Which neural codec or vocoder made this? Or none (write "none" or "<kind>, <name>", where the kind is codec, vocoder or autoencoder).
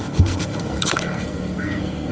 codec, SNAC